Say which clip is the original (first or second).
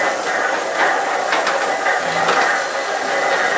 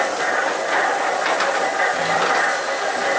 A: first